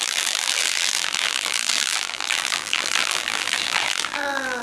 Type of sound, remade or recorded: remade